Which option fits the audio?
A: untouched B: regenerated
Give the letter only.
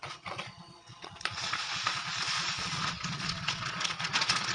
B